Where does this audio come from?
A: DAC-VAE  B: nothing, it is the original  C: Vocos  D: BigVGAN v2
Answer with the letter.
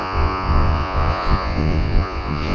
C